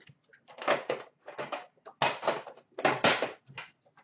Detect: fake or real real